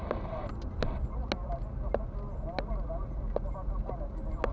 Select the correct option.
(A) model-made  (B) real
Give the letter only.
B